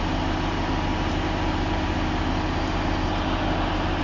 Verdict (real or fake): real